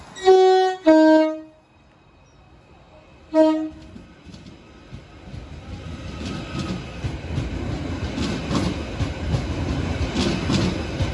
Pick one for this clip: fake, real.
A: real